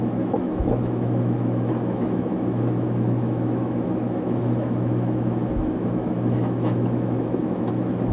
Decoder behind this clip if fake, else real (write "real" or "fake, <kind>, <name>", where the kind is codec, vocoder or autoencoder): fake, autoencoder, DAC-VAE